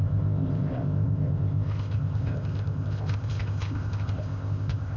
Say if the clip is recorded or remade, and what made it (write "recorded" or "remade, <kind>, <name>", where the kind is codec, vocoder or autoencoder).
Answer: remade, codec, ZipCodec